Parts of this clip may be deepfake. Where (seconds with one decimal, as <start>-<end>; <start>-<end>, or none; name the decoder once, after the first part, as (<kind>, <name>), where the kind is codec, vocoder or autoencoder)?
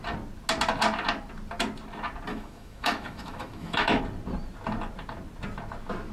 2.3-4.0 (autoencoder, DAC-VAE)